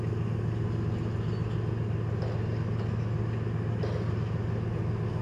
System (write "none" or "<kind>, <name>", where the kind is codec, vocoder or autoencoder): none